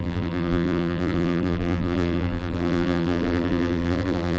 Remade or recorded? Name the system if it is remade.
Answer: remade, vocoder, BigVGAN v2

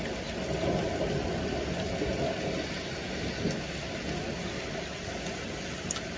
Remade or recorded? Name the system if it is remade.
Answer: recorded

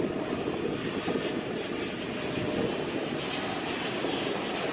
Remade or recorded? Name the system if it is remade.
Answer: recorded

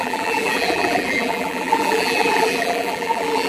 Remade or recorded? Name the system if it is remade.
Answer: remade, vocoder, BigVGAN v2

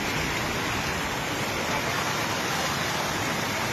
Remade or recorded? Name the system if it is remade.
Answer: recorded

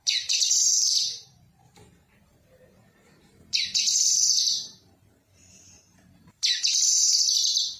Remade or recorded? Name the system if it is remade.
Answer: remade, vocoder, BigVGAN v2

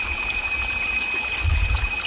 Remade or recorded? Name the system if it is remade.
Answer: recorded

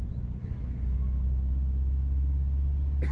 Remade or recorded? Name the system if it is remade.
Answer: recorded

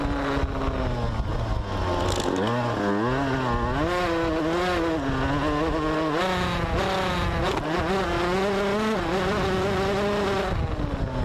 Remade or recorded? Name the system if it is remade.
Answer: recorded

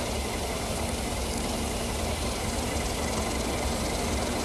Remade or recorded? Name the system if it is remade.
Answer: recorded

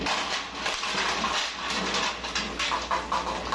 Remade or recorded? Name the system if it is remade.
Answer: recorded